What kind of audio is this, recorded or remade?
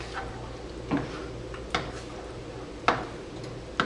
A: recorded